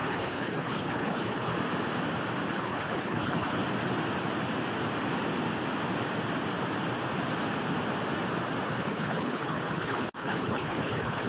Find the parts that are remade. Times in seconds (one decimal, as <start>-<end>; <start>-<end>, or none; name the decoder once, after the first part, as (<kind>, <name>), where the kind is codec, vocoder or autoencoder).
0.0-1.5 (codec, HILCodec); 2.5-3.6; 8.8-11.3

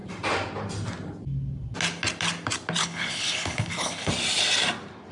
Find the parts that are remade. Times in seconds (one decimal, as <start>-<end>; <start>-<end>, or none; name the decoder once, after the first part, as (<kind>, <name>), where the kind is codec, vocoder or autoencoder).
2.8-4.1 (codec, HILCodec)

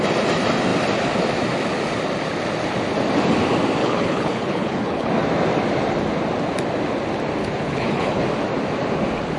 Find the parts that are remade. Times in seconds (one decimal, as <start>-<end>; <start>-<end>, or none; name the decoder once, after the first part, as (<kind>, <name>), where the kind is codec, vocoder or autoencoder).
3.8-5.1 (codec, HILCodec); 7.4-8.2

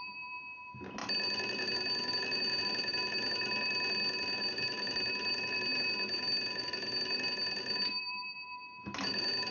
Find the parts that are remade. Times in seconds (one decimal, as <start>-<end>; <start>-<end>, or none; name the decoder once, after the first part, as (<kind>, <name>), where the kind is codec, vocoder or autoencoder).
none

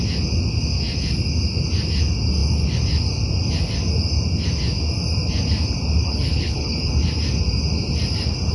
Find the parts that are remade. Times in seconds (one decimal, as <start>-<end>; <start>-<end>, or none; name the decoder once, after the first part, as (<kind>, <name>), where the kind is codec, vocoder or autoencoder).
6.0-6.9 (codec, HILCodec)

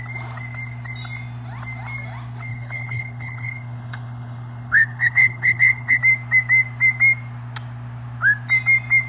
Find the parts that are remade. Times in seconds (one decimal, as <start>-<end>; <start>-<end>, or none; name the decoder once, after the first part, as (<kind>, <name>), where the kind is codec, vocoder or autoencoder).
2.5-6.0 (codec, HILCodec)